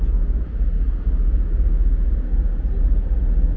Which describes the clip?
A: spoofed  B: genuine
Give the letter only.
B